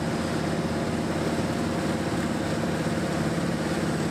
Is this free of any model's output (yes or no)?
yes